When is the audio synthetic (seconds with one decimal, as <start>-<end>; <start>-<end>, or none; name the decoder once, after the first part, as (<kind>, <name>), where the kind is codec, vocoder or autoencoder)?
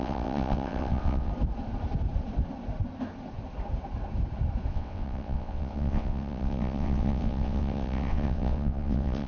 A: 0.0-1.3 (vocoder, WaveNeXt); 4.7-9.3